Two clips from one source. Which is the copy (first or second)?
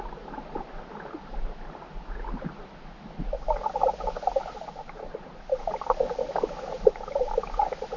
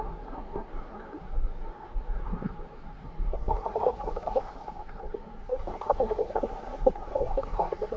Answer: second